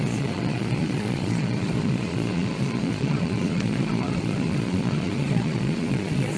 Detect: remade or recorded remade